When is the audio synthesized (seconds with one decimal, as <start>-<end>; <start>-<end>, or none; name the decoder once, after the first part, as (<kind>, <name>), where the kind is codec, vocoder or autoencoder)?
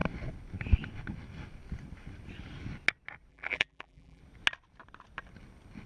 3.3-4.2 (vocoder, BigVGAN v2)